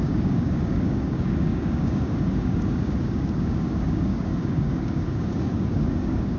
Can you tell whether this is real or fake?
fake